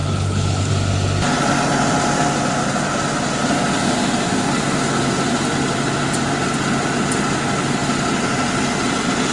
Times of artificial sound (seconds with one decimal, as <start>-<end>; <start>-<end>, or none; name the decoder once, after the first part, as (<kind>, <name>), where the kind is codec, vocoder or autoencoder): 0.0-0.7 (codec, HILCodec)